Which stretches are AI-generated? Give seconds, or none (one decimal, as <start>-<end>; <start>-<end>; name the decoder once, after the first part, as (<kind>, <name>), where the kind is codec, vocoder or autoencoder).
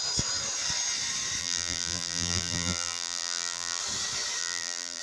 1.4-3.8 (vocoder, BigVGAN v2); 4.4-5.0